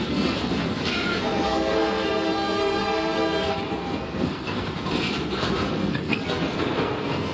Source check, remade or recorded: remade